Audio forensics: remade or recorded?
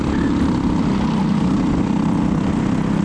recorded